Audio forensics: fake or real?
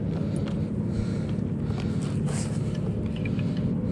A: real